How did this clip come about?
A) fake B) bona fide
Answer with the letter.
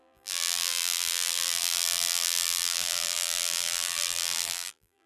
A